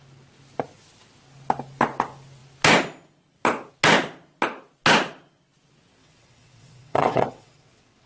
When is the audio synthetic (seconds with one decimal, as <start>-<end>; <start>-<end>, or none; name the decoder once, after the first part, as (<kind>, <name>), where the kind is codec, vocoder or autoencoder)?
6.0-8.1 (vocoder, WaveNeXt)